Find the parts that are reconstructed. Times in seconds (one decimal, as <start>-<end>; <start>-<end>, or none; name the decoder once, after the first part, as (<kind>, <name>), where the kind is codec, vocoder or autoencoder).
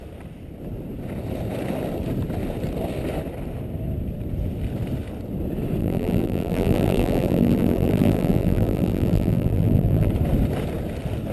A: 5.8-10.1 (vocoder, BigVGAN v2)